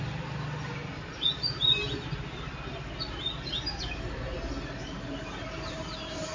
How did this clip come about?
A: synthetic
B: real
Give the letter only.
B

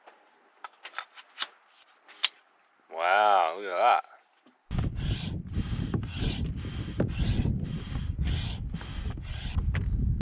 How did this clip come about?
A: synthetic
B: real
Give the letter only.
B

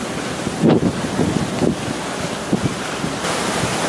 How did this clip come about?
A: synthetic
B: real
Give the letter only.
B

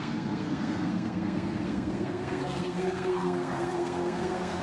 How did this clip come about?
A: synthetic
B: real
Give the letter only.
A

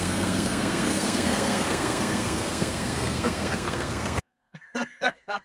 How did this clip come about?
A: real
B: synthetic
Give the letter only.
B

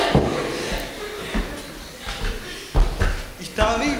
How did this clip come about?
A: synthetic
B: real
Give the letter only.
B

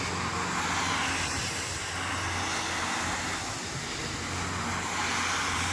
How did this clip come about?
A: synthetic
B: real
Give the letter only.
B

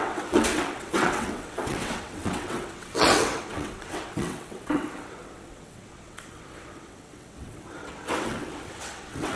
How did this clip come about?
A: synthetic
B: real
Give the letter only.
A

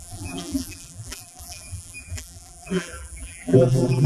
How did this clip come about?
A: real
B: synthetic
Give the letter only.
B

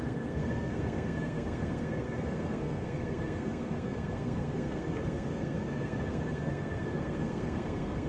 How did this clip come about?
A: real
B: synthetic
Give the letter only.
B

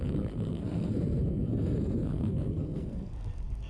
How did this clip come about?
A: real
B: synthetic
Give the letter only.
B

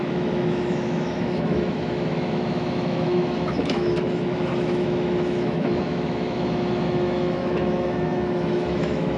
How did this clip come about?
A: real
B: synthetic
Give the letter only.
B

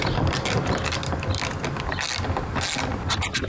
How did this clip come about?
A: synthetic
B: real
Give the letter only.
B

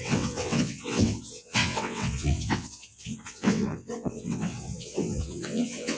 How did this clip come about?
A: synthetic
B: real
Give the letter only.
A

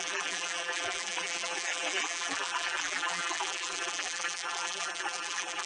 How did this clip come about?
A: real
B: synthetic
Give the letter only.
B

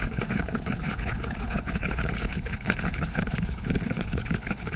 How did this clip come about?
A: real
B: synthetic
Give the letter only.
B